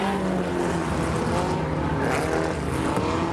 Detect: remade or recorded recorded